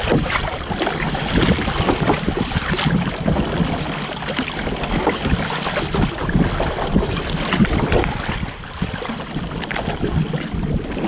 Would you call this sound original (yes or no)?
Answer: yes